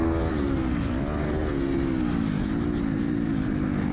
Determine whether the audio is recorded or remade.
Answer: recorded